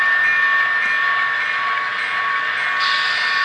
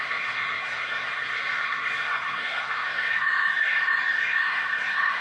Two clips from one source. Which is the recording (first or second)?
first